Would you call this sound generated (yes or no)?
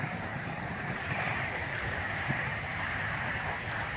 yes